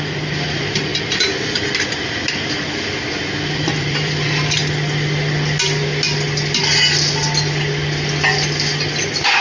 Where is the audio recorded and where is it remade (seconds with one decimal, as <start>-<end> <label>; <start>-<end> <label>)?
0.0-0.9 remade; 0.9-3.1 recorded; 3.1-4.6 remade; 4.6-9.0 recorded; 9.0-9.4 remade